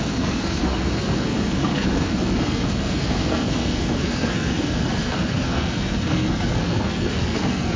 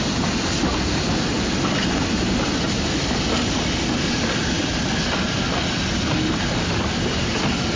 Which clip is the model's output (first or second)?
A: first